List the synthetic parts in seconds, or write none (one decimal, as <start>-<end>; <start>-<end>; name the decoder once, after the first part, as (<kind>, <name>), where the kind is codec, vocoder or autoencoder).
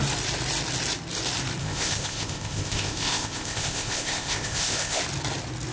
1.6-5.0 (codec, ZipCodec)